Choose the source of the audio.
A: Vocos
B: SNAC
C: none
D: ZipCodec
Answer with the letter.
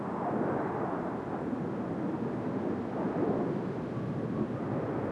C